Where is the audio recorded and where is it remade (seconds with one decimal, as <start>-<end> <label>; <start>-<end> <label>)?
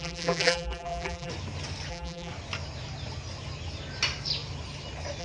0.0-1.3 remade; 1.3-1.9 recorded; 1.9-2.3 remade; 2.3-5.2 recorded